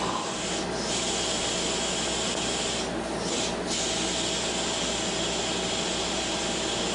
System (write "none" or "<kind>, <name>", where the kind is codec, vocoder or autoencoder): none